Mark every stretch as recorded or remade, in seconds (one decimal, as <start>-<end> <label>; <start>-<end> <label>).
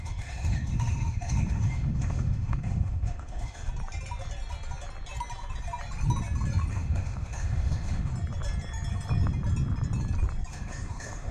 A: 0.0-3.7 remade; 3.7-6.7 recorded; 6.7-8.1 remade; 8.1-10.5 recorded; 10.5-11.3 remade